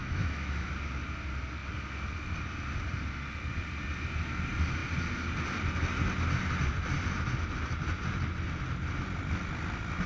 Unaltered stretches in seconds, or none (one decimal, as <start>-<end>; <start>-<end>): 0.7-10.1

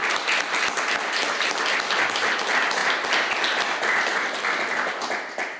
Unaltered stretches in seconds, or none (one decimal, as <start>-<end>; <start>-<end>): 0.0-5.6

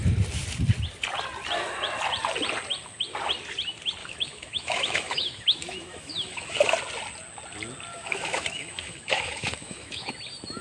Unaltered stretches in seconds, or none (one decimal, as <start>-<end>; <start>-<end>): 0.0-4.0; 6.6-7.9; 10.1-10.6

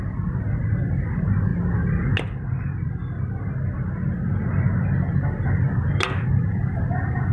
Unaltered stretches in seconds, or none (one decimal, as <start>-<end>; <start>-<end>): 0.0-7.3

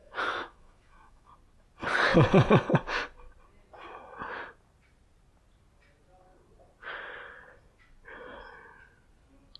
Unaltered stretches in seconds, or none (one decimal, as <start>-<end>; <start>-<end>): 1.3-9.6

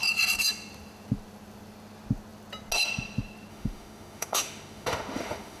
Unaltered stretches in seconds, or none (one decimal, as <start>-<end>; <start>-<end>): 0.0-3.5

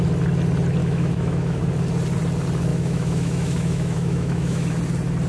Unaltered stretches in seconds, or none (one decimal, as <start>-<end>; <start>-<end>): 0.0-0.8; 1.6-2.7; 4.8-5.3